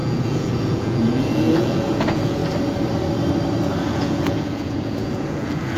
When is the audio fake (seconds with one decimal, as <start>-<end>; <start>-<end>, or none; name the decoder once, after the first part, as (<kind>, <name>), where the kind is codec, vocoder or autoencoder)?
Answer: 0.0-2.4 (vocoder, Vocos); 3.8-5.8